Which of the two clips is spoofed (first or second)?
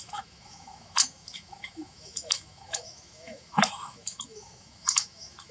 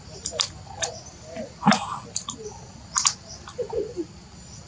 first